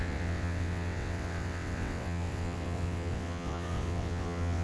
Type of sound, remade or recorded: remade